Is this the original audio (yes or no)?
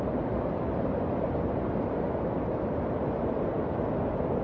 yes